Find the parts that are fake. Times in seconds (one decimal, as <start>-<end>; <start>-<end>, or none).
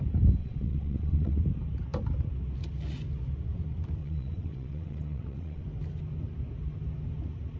0.4-1.4; 4.0-5.6